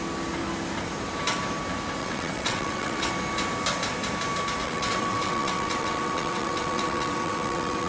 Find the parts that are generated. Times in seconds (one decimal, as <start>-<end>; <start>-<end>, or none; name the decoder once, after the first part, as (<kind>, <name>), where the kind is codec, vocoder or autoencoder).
2.0-3.1 (vocoder, WaveNeXt); 4.6-7.9